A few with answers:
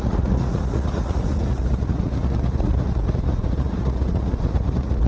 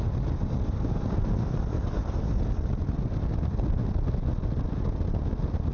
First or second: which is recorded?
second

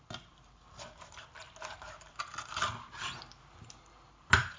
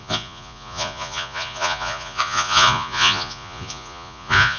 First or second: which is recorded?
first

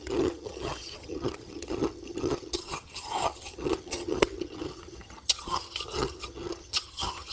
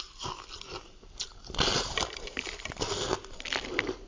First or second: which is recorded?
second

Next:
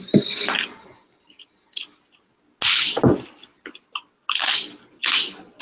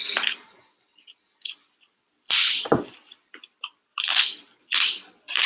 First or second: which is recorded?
first